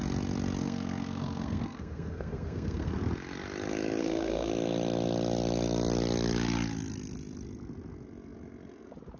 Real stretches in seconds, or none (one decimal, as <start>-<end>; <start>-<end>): 0.0-0.6; 2.9-4.0; 4.5-9.2